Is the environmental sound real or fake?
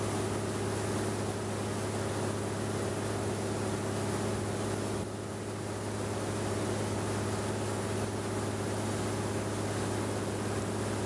real